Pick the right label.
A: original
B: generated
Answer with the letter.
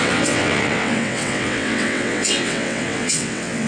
B